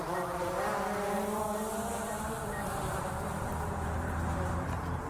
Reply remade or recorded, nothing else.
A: remade